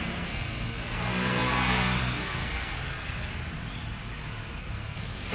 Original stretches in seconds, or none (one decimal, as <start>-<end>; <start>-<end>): 3.3-4.6